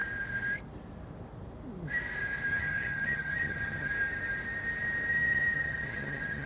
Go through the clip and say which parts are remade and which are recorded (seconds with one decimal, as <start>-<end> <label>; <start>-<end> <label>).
0.0-2.5 recorded; 2.5-3.9 remade; 3.9-5.1 recorded; 5.1-6.5 remade

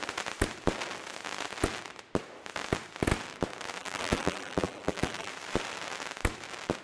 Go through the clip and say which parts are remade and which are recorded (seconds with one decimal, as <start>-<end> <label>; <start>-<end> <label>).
0.0-3.8 recorded; 3.8-5.3 remade; 5.3-6.8 recorded

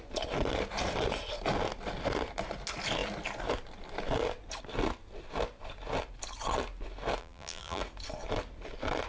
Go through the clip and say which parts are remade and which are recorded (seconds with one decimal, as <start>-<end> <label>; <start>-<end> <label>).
0.0-7.2 recorded; 7.2-7.8 remade; 7.8-9.1 recorded